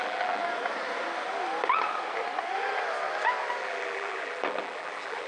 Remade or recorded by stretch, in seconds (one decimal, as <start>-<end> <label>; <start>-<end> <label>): 0.0-0.4 remade; 0.4-3.6 recorded; 3.6-5.3 remade